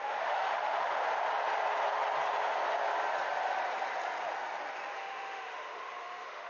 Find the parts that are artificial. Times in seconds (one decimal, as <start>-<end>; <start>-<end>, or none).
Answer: 0.0-1.0; 4.9-6.5